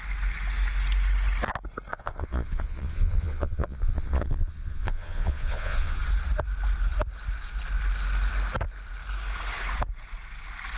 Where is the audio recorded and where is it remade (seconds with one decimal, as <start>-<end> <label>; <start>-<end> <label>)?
0.0-1.9 recorded; 1.9-6.0 remade; 6.0-10.8 recorded